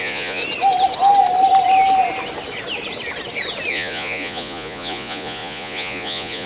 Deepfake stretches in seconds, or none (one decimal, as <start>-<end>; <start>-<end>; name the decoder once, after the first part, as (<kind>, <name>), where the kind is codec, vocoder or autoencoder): 0.0-0.4 (vocoder, Vocos); 3.7-6.5